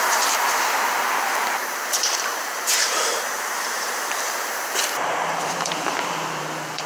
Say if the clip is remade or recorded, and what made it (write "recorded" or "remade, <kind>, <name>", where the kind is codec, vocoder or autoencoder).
remade, vocoder, BigVGAN v2